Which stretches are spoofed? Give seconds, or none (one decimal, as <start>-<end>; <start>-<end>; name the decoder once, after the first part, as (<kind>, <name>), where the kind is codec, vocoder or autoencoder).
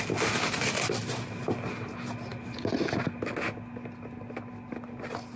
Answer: none